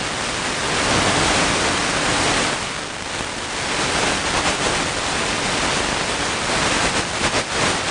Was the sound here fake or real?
real